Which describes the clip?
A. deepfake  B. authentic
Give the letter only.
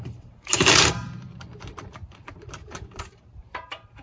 A